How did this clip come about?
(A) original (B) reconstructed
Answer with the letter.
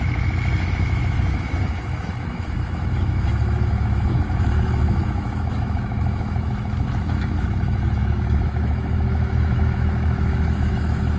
B